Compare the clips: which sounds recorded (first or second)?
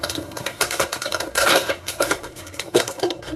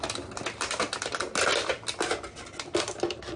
second